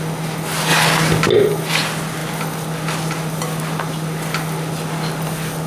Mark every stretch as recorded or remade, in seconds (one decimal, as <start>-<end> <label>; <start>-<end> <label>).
0.0-5.7 recorded